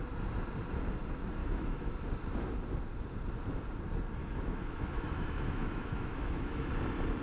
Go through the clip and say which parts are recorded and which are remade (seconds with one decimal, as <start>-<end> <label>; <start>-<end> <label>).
0.0-1.4 recorded; 1.4-1.9 remade; 1.9-4.2 recorded; 4.2-6.7 remade; 6.7-7.2 recorded